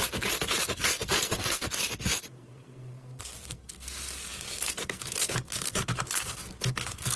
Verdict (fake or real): fake